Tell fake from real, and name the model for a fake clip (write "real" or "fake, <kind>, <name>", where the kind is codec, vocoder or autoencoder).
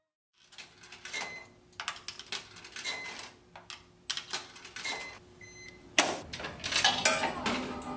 real